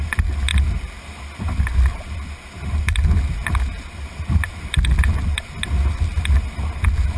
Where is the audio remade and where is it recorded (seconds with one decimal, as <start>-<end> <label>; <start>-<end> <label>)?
0.0-7.2 recorded